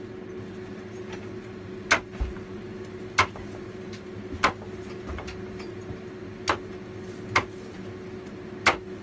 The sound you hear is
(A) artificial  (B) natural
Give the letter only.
B